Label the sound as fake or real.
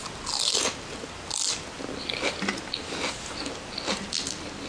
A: real